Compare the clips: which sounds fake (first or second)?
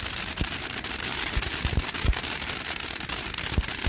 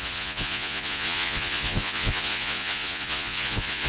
second